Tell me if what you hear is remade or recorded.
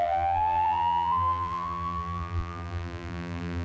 remade